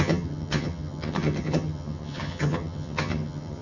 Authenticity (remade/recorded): remade